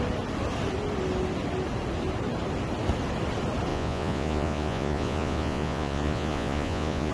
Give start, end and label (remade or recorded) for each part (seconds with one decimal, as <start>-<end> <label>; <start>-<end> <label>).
0.0-3.7 recorded; 3.7-7.1 remade